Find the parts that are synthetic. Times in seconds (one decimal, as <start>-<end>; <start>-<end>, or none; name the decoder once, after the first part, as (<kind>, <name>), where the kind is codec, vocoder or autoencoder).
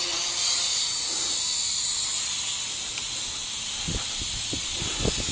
0.0-0.7 (vocoder, BigVGAN v2); 3.8-5.3